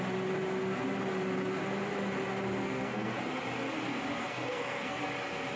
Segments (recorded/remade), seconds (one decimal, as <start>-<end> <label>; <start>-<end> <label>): 0.0-2.6 recorded; 2.6-3.2 remade; 3.2-4.2 recorded; 4.2-5.0 remade; 5.0-5.6 recorded